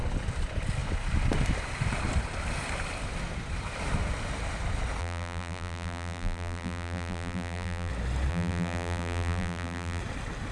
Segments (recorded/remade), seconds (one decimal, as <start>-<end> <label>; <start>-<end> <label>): 0.0-5.0 recorded; 5.0-7.9 remade; 7.9-8.3 recorded; 8.3-10.0 remade; 10.0-10.5 recorded